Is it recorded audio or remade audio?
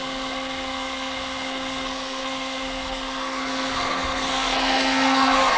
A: remade